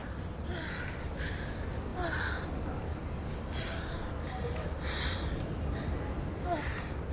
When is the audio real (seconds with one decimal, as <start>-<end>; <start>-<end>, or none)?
0.0-7.1